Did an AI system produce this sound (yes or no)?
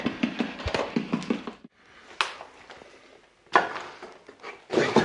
no